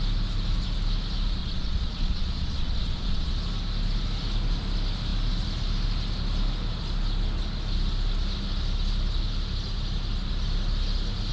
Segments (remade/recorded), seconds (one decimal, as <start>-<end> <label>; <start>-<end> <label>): 0.0-1.4 recorded; 1.4-3.3 remade; 3.3-11.3 recorded